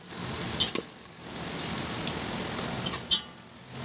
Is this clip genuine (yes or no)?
yes